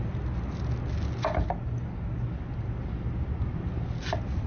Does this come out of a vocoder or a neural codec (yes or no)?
no